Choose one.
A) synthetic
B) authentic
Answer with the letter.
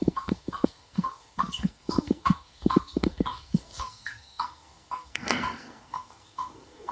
A